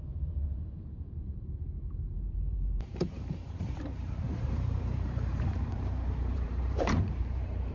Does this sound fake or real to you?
fake